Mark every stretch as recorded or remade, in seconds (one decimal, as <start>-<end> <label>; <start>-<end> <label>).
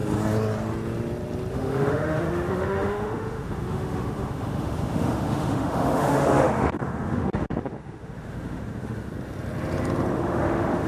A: 0.0-1.5 recorded; 1.5-9.1 remade; 9.1-10.1 recorded; 10.1-10.9 remade